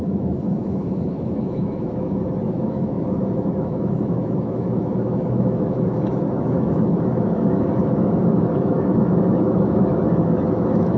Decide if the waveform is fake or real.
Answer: fake